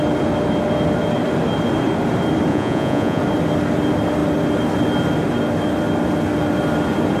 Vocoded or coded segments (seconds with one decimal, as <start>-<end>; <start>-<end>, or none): 2.5-3.2